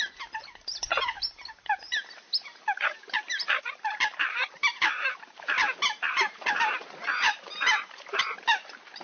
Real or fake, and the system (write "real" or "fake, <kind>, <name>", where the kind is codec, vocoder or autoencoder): fake, vocoder, BigVGAN v2